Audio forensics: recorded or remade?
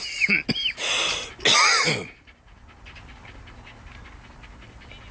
recorded